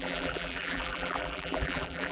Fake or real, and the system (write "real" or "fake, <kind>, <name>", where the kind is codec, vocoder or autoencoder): fake, vocoder, BigVGAN v2